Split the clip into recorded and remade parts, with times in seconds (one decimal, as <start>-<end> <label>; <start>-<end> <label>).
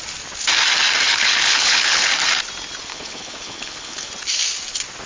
0.0-1.1 recorded; 1.1-2.1 remade; 2.1-2.9 recorded; 2.9-4.1 remade; 4.1-5.1 recorded